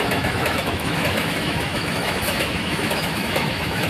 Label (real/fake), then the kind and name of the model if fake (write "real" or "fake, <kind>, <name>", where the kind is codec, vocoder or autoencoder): fake, autoencoder, DAC-VAE